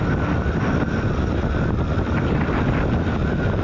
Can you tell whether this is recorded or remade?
recorded